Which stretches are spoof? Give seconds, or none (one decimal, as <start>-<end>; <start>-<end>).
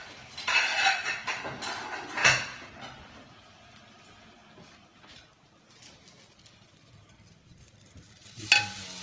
none